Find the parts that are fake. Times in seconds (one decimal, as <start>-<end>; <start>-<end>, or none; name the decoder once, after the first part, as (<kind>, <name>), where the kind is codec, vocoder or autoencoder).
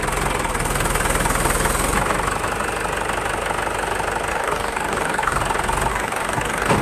4.3-5.4 (codec, DAC); 5.9-6.8